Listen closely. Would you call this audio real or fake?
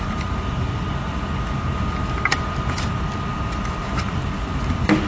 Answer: real